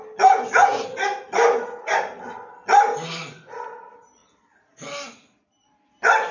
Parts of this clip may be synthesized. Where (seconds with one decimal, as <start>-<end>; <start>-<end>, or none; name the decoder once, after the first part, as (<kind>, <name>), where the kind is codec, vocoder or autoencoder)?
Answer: none